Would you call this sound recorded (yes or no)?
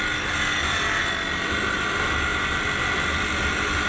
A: yes